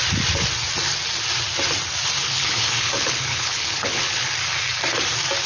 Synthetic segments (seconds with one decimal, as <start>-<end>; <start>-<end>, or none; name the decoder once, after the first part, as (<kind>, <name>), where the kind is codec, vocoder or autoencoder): 2.2-4.3 (codec, HILCodec)

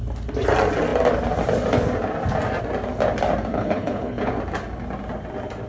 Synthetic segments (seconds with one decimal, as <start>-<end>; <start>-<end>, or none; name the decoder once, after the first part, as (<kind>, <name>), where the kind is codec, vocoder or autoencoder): 3.5-4.3 (codec, HILCodec)

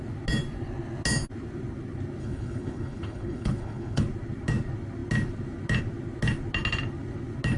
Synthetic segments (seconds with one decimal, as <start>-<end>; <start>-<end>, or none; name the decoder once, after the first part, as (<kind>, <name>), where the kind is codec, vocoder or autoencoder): 2.2-4.0 (codec, HILCodec)

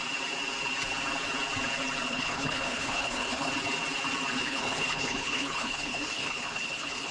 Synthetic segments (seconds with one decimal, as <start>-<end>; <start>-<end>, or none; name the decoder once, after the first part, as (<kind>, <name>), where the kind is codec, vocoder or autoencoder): 2.1-3.5 (codec, HILCodec); 4.4-7.1